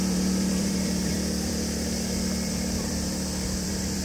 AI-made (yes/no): yes